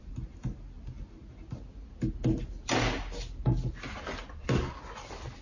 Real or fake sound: real